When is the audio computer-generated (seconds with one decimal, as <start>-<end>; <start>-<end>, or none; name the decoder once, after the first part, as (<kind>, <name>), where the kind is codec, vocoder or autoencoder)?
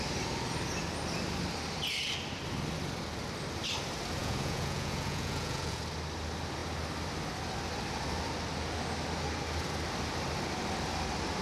4.2-5.8 (vocoder, Vocos)